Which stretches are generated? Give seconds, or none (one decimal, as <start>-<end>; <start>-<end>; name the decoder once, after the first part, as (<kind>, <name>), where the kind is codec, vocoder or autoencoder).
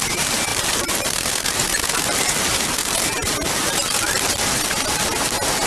0.5-1.3 (vocoder, BigVGAN v2); 2.8-4.2